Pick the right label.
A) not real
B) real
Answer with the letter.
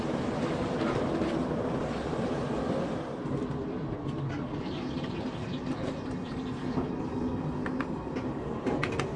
B